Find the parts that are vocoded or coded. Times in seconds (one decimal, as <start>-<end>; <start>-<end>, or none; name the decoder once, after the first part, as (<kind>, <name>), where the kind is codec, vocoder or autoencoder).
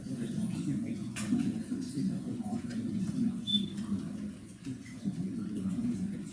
0.0-3.5 (vocoder, Vocos); 4.4-6.3